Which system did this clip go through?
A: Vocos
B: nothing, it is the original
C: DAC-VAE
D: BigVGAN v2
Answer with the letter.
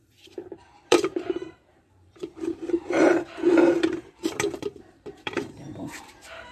D